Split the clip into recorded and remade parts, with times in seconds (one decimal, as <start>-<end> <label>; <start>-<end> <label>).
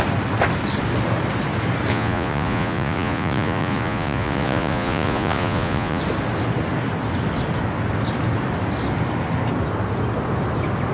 0.0-1.9 recorded; 1.9-6.0 remade; 6.0-10.9 recorded